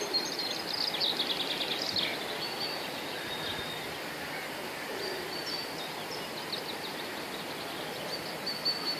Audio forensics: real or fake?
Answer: real